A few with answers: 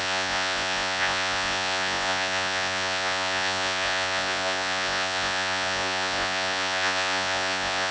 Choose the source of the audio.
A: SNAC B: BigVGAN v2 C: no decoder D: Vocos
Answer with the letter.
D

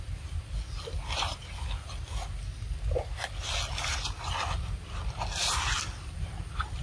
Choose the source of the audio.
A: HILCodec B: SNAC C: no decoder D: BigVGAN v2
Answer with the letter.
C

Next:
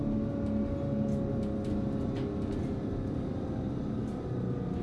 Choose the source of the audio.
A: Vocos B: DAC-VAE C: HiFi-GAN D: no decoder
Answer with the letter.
D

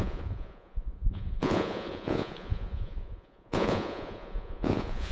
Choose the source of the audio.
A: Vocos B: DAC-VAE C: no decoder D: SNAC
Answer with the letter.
A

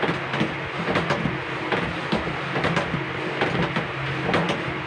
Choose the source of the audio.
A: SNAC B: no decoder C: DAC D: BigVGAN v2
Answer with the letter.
B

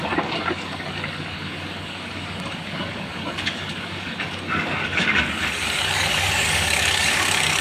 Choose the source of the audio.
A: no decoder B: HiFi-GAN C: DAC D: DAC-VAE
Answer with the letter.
C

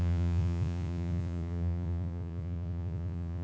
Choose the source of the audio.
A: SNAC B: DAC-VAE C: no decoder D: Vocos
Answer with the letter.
D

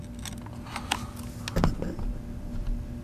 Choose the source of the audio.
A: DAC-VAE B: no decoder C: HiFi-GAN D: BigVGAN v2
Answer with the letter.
B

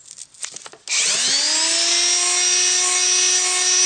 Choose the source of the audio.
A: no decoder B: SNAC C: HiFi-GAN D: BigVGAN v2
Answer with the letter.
A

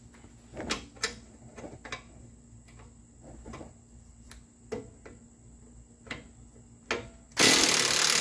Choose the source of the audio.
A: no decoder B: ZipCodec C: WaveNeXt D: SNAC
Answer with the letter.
A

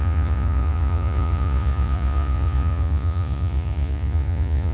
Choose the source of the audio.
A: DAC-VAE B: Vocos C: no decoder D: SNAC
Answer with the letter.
B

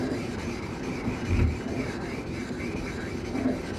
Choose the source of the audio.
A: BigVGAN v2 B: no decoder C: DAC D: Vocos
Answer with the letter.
A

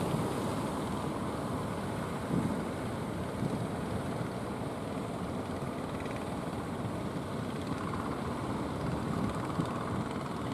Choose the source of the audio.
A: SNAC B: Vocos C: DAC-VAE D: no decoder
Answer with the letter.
D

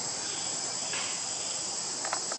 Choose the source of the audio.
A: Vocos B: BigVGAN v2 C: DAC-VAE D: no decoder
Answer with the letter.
D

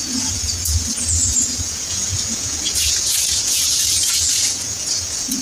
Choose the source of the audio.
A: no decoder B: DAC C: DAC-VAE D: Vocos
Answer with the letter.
D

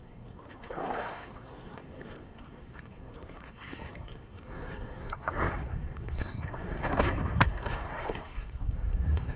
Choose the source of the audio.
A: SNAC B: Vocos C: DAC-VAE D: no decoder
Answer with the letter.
A